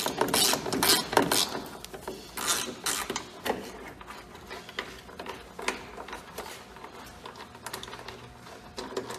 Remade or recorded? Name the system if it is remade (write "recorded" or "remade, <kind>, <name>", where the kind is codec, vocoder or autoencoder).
recorded